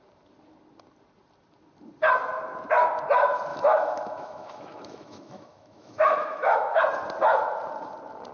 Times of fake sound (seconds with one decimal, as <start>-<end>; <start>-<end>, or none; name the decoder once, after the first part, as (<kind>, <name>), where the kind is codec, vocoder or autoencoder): 3.5-6.8 (autoencoder, DAC-VAE)